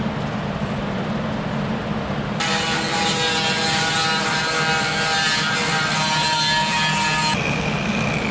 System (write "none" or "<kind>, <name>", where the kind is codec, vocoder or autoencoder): none